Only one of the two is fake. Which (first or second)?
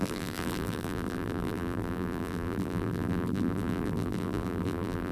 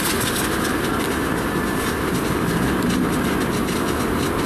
first